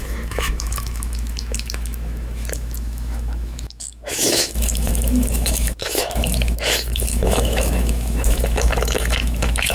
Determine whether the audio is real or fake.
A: fake